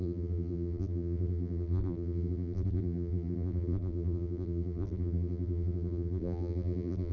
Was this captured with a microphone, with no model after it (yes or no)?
no